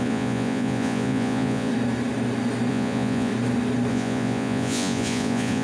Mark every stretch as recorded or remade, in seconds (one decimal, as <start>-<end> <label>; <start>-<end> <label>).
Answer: 0.0-1.7 remade; 1.7-2.7 recorded; 2.7-3.3 remade; 3.3-3.9 recorded; 3.9-5.6 remade